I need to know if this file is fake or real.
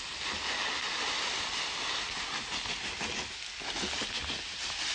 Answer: real